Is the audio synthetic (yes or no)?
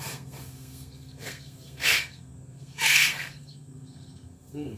yes